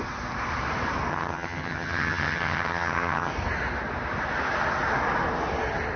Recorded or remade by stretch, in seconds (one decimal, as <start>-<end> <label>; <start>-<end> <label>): 0.0-1.1 recorded; 1.1-3.3 remade; 3.3-6.0 recorded